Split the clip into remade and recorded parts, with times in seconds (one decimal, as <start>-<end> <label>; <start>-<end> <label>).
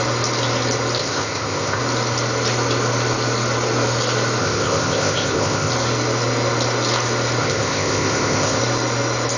0.0-1.0 recorded; 1.0-1.8 remade; 1.8-4.4 recorded; 4.4-5.7 remade; 5.7-7.4 recorded; 7.4-8.6 remade; 8.6-9.4 recorded